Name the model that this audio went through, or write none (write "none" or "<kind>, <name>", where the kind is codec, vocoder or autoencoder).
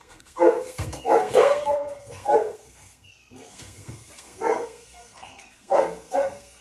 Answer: codec, SNAC